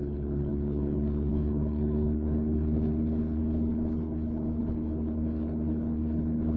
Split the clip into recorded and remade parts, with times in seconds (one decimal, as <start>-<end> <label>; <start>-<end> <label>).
0.0-6.6 remade